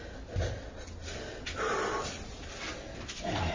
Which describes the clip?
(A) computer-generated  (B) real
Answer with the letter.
B